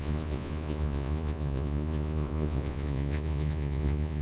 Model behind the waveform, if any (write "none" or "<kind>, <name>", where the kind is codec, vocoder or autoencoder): vocoder, Vocos